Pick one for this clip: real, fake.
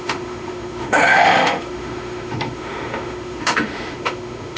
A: fake